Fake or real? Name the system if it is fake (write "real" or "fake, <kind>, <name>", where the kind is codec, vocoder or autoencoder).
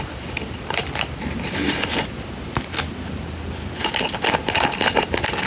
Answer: real